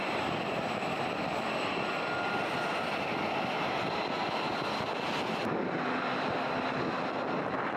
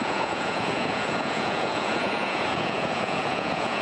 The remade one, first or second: second